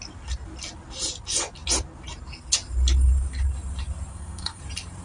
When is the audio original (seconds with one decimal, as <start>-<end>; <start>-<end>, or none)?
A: 0.0-4.1; 4.6-5.0